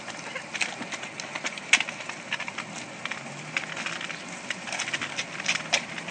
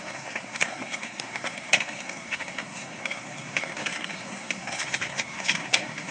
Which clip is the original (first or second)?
first